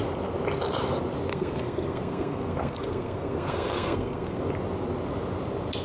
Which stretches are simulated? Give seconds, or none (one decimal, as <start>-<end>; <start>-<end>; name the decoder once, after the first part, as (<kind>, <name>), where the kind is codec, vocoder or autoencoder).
1.3-4.4 (codec, SNAC)